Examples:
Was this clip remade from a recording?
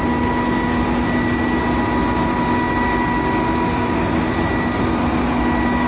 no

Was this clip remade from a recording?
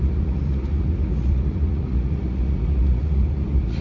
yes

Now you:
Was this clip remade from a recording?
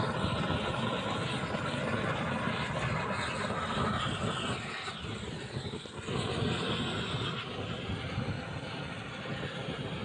no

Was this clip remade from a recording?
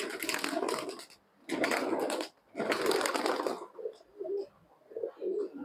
no